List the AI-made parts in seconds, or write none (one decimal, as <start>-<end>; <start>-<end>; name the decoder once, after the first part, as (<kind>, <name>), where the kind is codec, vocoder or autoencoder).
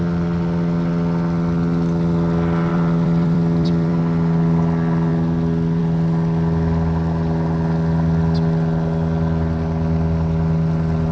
2.7-4.0 (vocoder, BigVGAN v2)